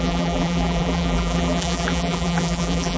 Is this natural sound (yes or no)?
no